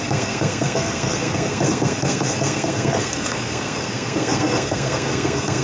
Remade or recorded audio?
remade